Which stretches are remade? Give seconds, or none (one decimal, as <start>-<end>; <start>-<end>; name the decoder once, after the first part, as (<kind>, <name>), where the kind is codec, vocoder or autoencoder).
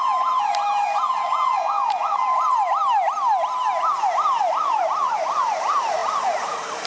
0.0-1.2 (vocoder, BigVGAN v2); 5.3-6.9